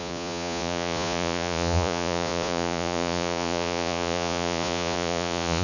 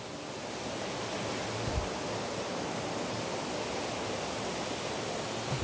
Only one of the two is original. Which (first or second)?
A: second